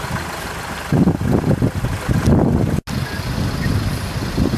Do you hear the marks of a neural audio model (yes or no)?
no